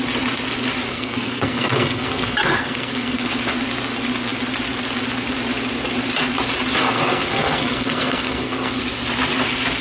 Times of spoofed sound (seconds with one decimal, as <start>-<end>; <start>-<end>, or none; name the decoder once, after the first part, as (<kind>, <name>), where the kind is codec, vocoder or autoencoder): 0.9-3.3 (codec, SNAC); 6.8-8.8